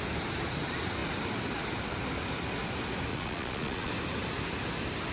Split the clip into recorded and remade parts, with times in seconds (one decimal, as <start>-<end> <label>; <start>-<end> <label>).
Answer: 0.0-3.1 recorded; 3.1-3.9 remade; 3.9-5.1 recorded